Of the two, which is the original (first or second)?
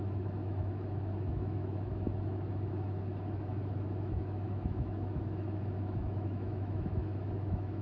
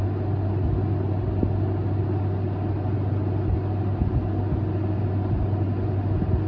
second